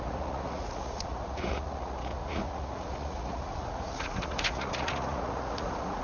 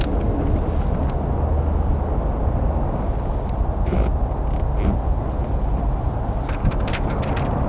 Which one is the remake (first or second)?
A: first